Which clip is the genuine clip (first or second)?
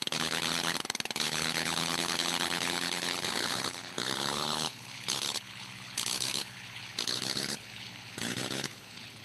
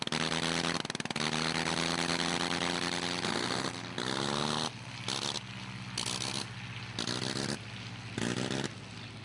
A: second